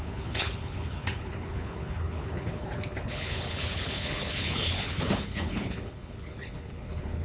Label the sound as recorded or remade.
remade